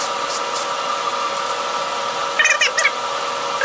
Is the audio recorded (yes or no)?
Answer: yes